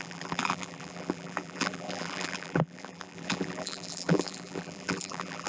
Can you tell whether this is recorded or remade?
remade